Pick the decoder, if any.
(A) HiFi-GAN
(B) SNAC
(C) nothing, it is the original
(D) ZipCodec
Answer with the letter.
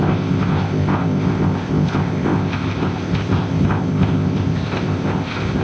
D